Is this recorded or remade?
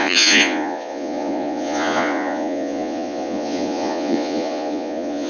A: remade